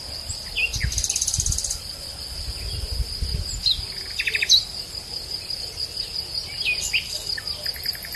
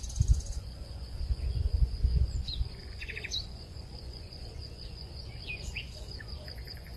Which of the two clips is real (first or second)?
first